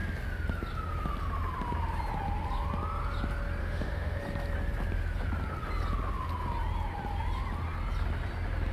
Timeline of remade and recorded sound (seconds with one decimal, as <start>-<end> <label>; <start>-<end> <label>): 0.0-3.6 recorded; 3.6-4.2 remade; 4.2-8.7 recorded